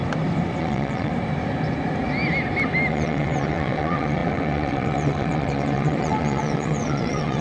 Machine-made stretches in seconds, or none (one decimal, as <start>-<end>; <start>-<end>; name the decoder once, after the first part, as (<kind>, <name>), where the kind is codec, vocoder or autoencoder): 0.6-1.1 (vocoder, WaveNeXt); 2.9-7.4